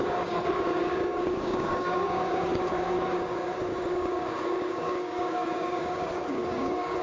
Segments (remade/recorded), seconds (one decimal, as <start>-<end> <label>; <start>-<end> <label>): 0.0-7.0 remade